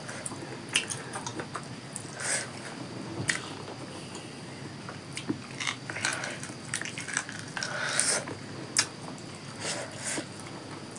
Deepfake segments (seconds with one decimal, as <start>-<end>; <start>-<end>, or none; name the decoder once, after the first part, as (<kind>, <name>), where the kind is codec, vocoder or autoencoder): none